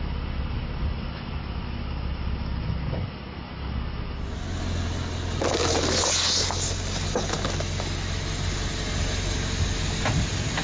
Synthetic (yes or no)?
no